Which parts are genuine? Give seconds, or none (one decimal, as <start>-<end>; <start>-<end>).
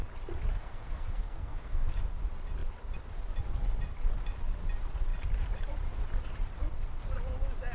0.0-0.5; 1.9-7.7